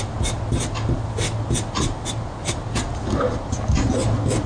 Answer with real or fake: real